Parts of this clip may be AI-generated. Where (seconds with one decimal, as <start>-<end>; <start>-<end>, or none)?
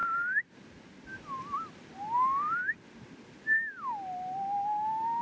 none